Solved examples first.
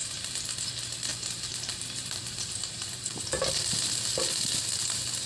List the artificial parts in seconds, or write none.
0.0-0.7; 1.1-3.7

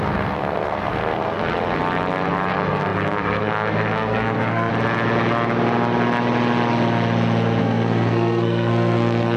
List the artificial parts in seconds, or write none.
0.0-1.4; 2.5-4.7; 7.6-9.4

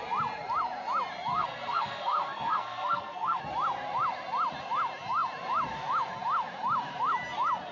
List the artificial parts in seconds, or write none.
1.3-3.4